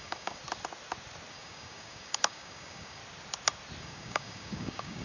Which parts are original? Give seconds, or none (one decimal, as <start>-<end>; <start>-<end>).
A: 0.4-1.3; 3.0-3.8